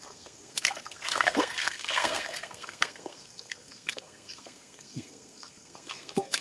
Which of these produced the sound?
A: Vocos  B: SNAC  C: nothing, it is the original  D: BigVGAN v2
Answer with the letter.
B